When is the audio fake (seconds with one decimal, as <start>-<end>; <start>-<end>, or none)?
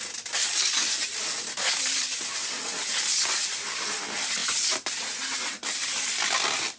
none